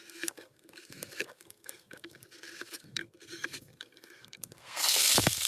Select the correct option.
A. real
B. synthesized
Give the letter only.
B